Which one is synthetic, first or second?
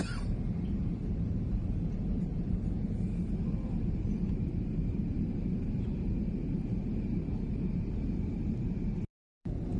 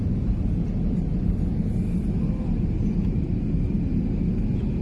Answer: first